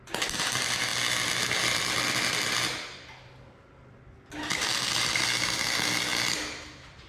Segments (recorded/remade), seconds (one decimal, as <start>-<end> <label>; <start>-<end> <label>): 0.0-7.1 recorded